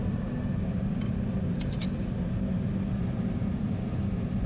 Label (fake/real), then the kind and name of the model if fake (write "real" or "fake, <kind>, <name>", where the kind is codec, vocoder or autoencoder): real